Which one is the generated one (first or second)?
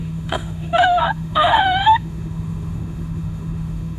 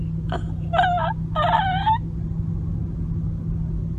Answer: first